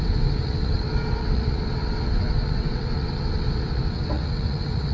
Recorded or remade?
remade